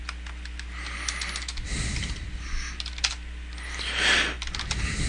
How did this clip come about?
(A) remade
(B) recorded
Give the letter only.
B